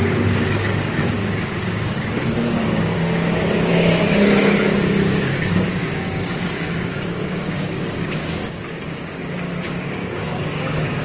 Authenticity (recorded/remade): remade